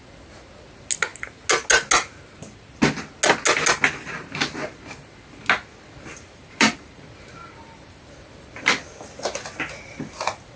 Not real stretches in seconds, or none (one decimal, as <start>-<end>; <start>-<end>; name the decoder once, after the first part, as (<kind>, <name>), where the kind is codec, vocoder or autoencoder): 6.1-7.1 (vocoder, BigVGAN v2)